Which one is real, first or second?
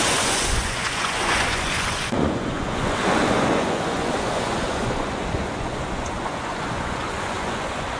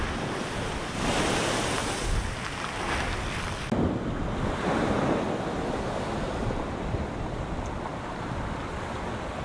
second